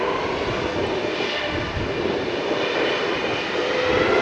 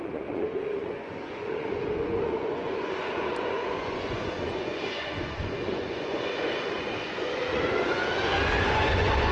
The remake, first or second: second